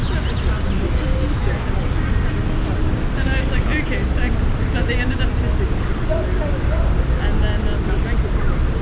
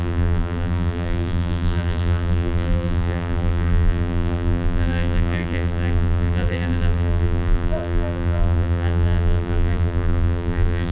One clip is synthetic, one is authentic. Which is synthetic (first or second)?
second